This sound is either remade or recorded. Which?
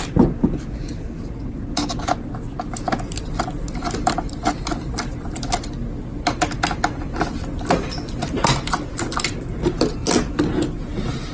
recorded